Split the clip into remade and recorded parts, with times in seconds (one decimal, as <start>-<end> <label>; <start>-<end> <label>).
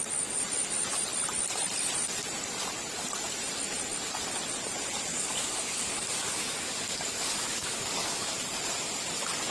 0.0-5.1 recorded; 5.1-8.3 remade; 8.3-9.5 recorded